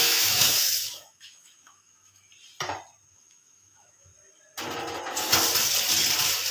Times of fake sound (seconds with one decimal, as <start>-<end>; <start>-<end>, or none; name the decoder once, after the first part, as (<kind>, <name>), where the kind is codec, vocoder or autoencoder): 0.0-2.3 (autoencoder, DAC-VAE); 3.1-4.1

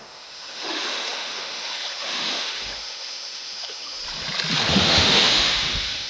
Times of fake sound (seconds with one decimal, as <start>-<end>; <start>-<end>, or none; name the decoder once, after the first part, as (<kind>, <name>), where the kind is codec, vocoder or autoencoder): 0.0-4.0 (autoencoder, DAC-VAE); 4.7-6.1